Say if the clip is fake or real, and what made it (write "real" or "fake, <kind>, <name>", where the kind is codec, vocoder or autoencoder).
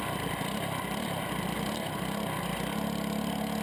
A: real